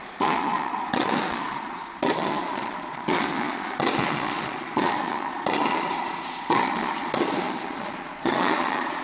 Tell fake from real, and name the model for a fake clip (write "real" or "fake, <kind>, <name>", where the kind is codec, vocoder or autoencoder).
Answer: fake, vocoder, Vocos